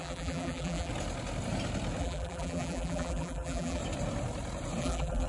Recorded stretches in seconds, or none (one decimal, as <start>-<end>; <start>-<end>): 0.9-2.0; 3.8-4.8